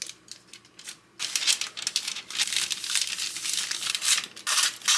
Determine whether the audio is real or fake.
real